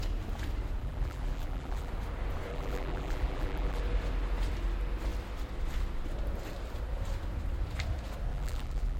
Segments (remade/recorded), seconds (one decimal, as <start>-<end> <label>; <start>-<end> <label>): 0.0-0.8 recorded; 0.8-1.9 remade; 1.9-2.5 recorded; 2.5-3.8 remade; 3.8-8.3 recorded; 8.3-9.0 remade